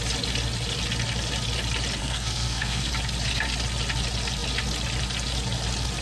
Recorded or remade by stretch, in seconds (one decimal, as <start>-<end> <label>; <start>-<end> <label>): 0.0-2.0 recorded; 2.0-2.9 remade; 2.9-6.0 recorded